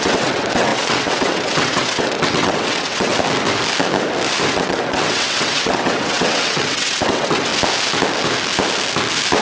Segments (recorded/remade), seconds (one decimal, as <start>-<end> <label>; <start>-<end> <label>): 0.0-3.1 remade; 3.1-4.5 recorded; 4.5-7.5 remade; 7.5-9.4 recorded